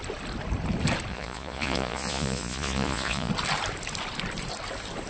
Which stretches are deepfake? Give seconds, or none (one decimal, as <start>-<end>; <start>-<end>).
1.1-3.3